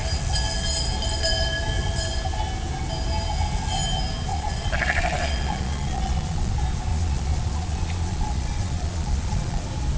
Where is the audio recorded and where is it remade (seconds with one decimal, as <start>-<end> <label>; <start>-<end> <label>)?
0.0-4.3 recorded; 4.3-6.5 remade; 6.5-6.9 recorded; 6.9-9.6 remade; 9.6-10.0 recorded